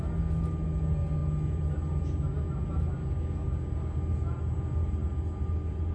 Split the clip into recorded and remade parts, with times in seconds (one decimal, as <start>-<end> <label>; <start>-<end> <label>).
0.0-5.9 recorded